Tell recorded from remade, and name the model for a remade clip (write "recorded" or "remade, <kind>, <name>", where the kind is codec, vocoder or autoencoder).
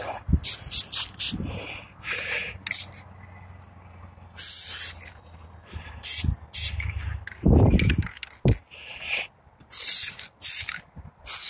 recorded